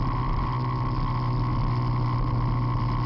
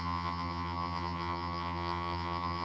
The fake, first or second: second